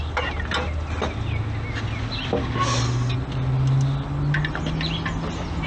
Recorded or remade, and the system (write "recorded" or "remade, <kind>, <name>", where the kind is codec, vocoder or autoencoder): recorded